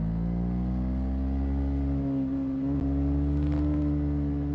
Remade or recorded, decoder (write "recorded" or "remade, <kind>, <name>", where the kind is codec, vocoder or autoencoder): recorded